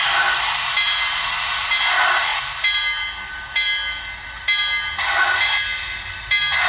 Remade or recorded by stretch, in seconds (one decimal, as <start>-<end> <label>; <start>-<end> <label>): 0.0-6.7 recorded